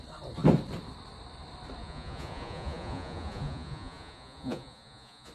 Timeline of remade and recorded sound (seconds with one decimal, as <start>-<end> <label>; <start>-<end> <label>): 0.0-1.8 recorded; 1.8-5.3 remade